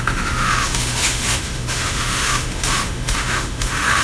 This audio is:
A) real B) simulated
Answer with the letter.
B